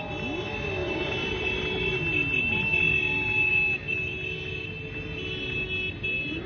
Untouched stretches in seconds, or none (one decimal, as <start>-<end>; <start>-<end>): 0.0-0.8; 3.5-6.5